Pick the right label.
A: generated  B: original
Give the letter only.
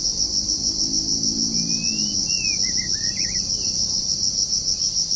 B